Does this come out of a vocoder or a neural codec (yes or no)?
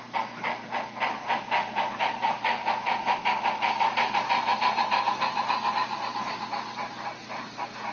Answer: no